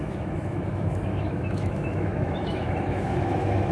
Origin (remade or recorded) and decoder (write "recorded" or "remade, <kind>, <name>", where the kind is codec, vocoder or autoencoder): remade, autoencoder, DAC-VAE